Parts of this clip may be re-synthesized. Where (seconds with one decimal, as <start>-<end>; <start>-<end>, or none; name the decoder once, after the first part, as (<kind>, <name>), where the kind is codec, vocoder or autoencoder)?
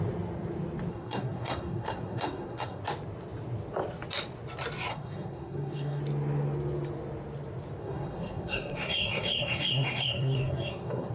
0.9-2.8 (codec, SNAC); 4.9-6.0; 7.8-11.1